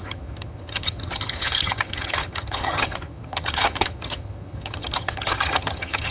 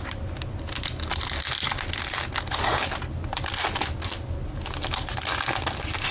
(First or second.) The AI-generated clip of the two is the first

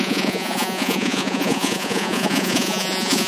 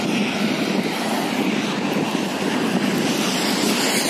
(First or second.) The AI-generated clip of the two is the first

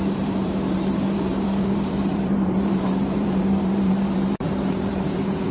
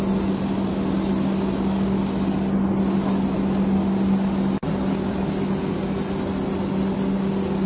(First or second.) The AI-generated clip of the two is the first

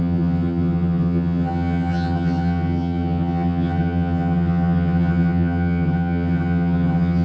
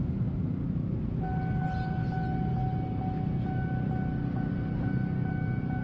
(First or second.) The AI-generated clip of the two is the first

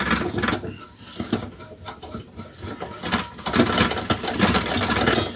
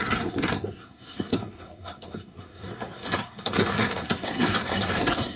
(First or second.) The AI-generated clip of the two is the second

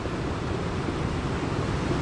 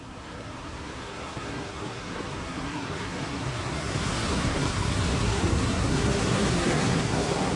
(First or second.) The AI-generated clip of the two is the second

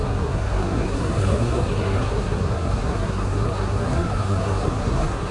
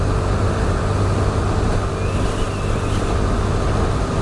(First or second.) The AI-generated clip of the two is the first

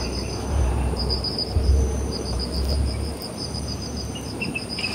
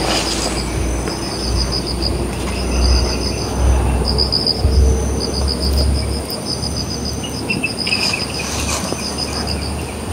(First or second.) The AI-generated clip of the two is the first